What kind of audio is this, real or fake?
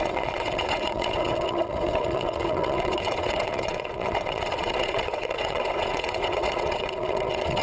fake